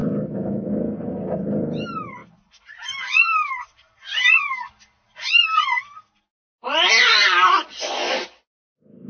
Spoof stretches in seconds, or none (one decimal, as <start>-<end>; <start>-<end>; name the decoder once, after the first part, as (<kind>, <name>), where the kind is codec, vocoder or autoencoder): 0.0-0.7 (autoencoder, DAC-VAE)